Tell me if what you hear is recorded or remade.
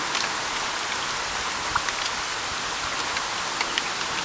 recorded